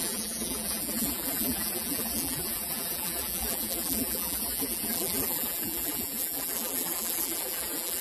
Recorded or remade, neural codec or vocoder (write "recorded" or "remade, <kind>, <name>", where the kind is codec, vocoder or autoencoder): remade, vocoder, BigVGAN v2